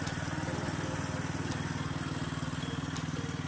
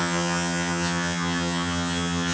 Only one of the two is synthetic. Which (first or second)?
second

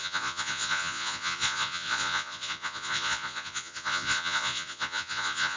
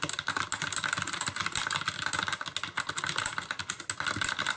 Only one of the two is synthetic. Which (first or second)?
first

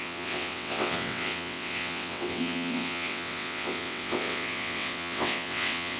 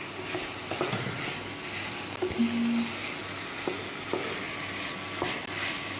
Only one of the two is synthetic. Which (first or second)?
first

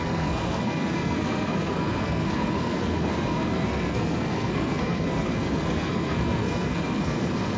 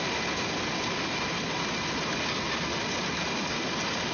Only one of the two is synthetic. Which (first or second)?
first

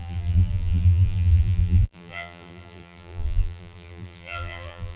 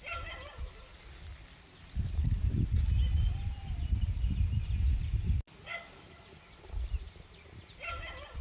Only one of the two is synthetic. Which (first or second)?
first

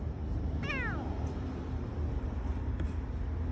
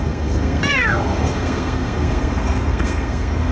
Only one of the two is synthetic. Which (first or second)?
second